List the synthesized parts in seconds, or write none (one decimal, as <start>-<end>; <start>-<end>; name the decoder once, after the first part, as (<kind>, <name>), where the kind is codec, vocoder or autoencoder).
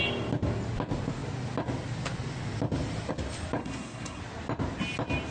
3.6-4.2 (codec, SNAC)